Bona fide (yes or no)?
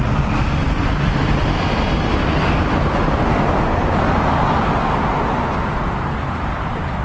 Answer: yes